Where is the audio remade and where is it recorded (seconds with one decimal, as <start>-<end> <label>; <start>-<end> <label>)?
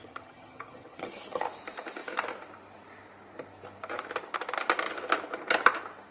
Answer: 0.0-1.4 remade; 1.4-6.1 recorded